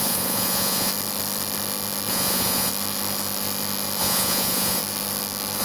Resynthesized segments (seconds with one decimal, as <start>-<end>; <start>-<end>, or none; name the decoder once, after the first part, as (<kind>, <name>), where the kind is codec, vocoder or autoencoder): 0.0-0.9 (vocoder, Vocos); 2.1-2.7; 4.0-4.8